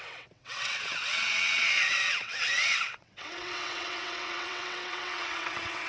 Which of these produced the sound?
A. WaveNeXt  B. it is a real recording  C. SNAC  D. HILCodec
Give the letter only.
A